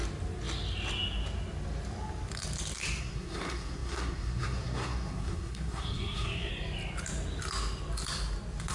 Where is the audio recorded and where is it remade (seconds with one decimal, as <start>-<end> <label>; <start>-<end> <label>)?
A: 0.0-3.0 recorded; 3.0-6.5 remade; 6.5-8.7 recorded